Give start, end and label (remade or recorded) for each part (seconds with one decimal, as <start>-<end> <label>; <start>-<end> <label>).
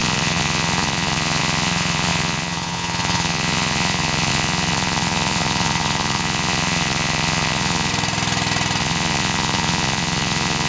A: 0.0-7.9 remade; 7.9-8.8 recorded; 8.8-10.7 remade